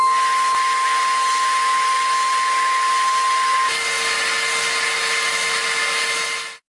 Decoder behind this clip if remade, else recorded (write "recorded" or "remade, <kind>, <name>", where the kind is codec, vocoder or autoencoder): recorded